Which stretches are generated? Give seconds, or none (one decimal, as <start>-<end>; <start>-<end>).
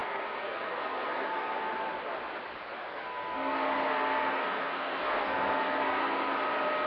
0.0-1.7; 2.9-6.3